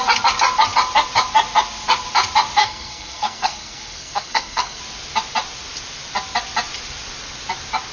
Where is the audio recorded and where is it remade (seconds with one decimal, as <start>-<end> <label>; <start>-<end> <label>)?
0.0-2.6 recorded; 2.6-4.8 remade; 4.8-7.9 recorded